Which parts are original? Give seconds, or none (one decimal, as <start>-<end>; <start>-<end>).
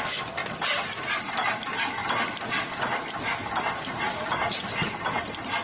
0.0-0.4; 1.6-2.0; 4.9-5.6